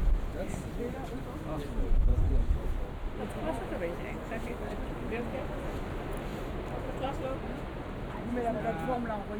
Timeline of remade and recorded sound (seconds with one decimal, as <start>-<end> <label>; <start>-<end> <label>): 0.0-2.1 recorded; 2.1-3.2 remade; 3.2-6.3 recorded; 6.3-6.8 remade; 6.8-9.4 recorded